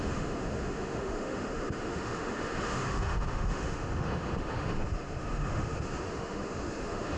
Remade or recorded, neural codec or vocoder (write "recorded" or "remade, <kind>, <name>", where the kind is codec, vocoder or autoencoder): remade, autoencoder, DAC-VAE